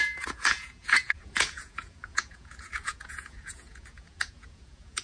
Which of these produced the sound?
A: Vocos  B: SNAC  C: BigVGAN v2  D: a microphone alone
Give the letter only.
A